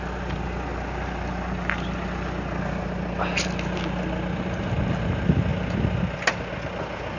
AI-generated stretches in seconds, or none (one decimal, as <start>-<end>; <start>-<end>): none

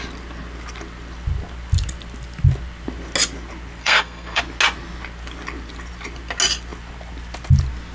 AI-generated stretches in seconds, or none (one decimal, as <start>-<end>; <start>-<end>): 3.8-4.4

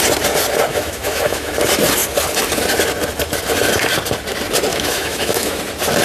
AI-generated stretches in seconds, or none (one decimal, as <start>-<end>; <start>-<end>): 0.7-1.6; 4.7-5.6